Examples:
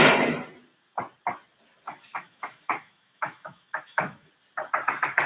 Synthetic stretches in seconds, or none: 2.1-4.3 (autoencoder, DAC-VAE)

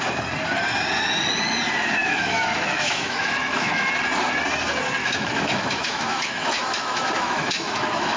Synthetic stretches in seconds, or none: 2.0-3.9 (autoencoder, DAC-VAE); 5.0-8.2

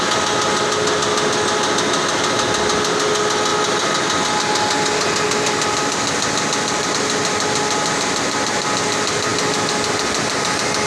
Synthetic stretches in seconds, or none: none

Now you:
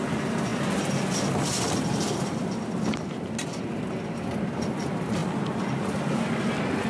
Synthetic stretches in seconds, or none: none

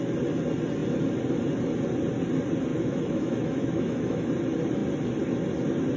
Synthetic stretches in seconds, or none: 2.7-4.3 (autoencoder, DAC-VAE)

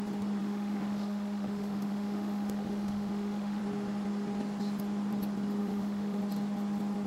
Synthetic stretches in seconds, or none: 0.4-3.6 (autoencoder, DAC-VAE); 5.6-6.2

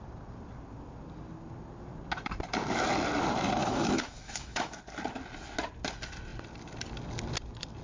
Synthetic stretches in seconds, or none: 3.6-4.8 (autoencoder, DAC-VAE)